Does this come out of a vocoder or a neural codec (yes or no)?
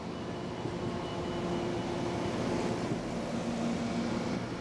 no